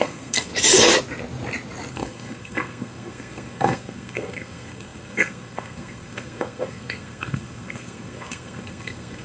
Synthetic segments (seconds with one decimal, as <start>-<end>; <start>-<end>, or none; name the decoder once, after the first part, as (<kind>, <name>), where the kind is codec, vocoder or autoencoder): 0.0-0.5 (codec, SNAC); 1.9-9.2